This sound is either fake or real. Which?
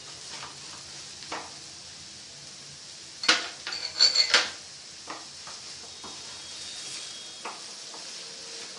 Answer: real